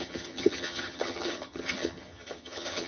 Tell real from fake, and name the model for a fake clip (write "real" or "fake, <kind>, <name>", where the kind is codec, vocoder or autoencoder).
fake, vocoder, HiFi-GAN